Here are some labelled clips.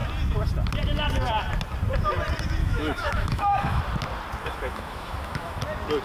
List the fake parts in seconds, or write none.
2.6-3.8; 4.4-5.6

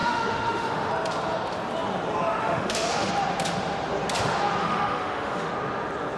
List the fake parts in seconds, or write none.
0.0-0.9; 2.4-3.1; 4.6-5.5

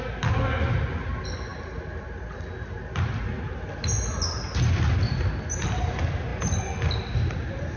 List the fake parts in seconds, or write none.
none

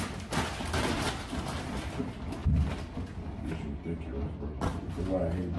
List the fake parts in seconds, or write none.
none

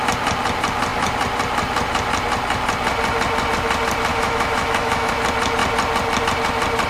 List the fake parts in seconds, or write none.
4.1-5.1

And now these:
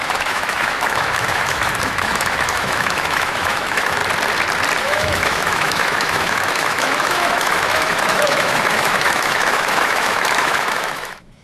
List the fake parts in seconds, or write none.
0.0-4.0; 4.8-11.4